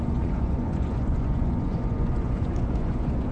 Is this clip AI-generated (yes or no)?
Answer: yes